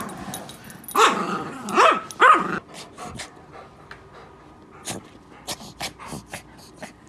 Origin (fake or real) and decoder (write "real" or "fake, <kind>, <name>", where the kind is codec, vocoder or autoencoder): real